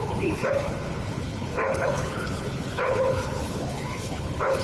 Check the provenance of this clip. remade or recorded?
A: remade